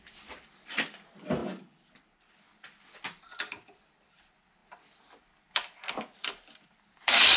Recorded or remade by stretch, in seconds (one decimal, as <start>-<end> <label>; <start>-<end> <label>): 0.0-7.4 remade